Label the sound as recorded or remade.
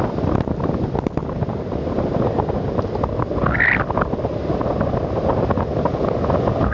recorded